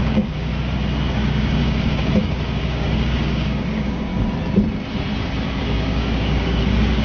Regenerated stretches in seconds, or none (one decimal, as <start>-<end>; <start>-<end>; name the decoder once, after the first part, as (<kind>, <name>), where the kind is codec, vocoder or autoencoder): 0.0-0.5 (codec, DAC); 1.1-4.1; 5.6-7.0